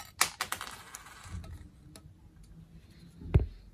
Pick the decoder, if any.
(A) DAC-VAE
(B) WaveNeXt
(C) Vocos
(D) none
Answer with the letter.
D